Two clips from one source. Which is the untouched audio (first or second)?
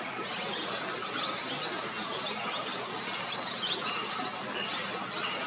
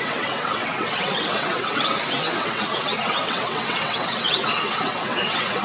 first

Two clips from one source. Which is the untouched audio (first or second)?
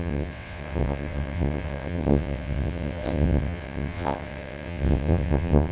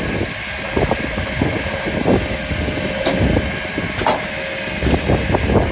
second